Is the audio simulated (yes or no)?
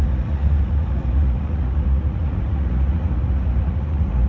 yes